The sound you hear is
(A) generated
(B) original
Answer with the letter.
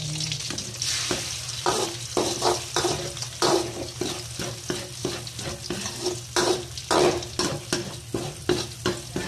B